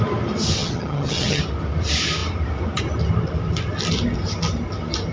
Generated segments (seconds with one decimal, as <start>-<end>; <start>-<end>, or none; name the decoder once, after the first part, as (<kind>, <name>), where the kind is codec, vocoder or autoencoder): 0.6-1.4 (vocoder, HiFi-GAN)